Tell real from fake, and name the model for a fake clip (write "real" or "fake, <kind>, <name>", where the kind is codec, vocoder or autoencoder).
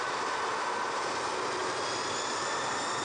fake, vocoder, BigVGAN v2